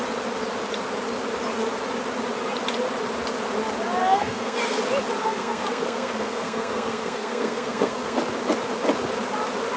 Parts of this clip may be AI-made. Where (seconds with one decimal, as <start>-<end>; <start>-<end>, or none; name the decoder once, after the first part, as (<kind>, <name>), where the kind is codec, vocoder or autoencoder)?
4.0-4.8 (codec, SNAC); 5.2-8.2